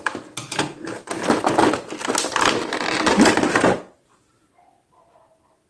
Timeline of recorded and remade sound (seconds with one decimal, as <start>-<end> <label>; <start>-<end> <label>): 0.0-5.7 recorded